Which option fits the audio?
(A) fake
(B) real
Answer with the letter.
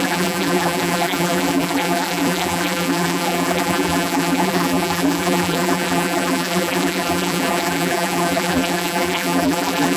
A